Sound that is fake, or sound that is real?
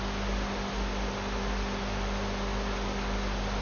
real